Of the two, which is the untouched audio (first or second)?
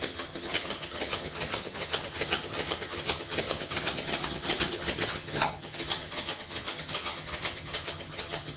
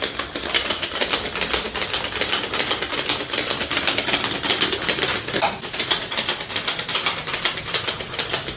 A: second